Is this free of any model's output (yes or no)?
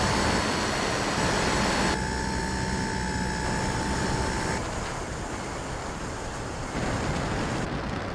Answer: yes